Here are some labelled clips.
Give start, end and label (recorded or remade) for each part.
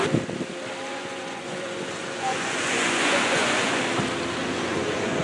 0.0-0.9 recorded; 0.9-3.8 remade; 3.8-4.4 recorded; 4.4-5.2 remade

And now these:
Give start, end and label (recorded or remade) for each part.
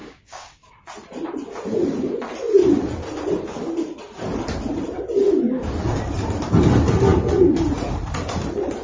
0.0-0.7 remade; 0.7-8.8 recorded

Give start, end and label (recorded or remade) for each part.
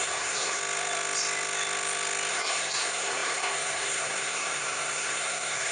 0.0-0.6 remade; 0.6-2.3 recorded; 2.3-5.7 remade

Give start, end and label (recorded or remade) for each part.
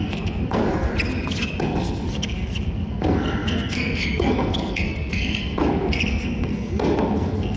0.0-0.9 remade; 0.9-1.6 recorded; 1.6-7.6 remade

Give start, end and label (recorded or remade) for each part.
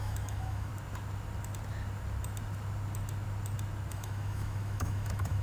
0.0-0.7 remade; 0.7-3.9 recorded; 3.9-5.4 remade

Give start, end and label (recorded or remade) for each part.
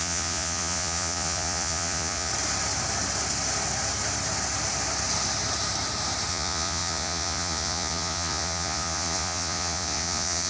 0.0-2.3 remade; 2.3-6.3 recorded; 6.3-10.5 remade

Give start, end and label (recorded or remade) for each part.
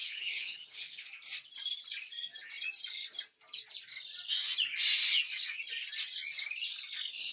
0.0-1.1 remade; 1.1-7.3 recorded